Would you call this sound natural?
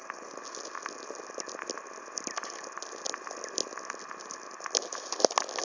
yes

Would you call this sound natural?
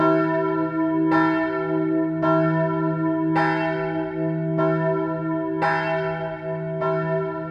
yes